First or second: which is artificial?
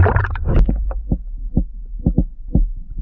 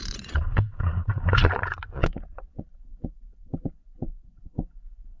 second